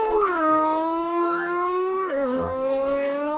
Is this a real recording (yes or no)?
no